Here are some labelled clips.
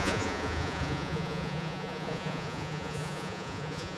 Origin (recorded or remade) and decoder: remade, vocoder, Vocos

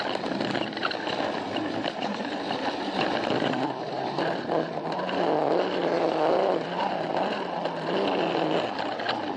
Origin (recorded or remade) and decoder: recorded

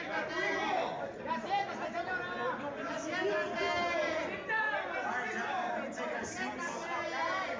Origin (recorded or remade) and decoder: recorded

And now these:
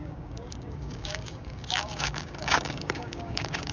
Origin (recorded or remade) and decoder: remade, codec, DAC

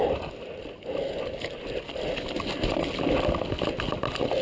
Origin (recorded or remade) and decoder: recorded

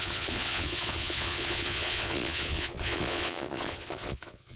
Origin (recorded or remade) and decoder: remade, vocoder, Vocos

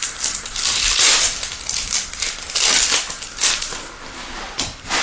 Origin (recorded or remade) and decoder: remade, vocoder, BigVGAN v2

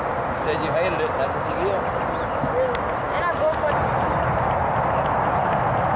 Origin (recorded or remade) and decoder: recorded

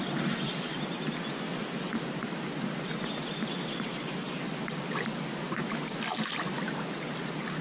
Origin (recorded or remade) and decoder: recorded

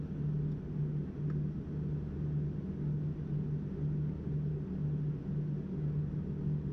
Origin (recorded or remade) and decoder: recorded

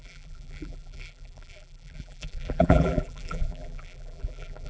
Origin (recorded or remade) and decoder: remade, vocoder, BigVGAN v2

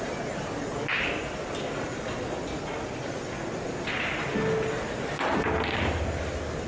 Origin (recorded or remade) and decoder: recorded